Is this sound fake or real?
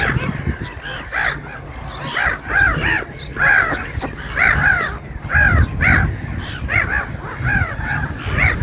real